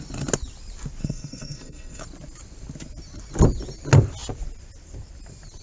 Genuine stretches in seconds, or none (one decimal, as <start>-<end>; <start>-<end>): 0.0-1.0; 2.0-5.6